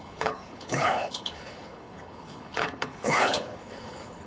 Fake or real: fake